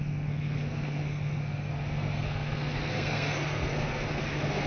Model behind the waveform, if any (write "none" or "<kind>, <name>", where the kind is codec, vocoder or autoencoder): codec, SNAC